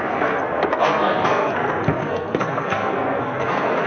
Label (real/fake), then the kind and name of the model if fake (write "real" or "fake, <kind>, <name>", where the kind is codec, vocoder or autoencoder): fake, codec, SNAC